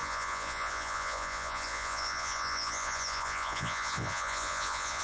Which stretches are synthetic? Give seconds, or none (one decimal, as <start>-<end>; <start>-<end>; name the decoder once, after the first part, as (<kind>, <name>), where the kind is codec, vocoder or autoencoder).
0.0-5.0 (vocoder, Vocos)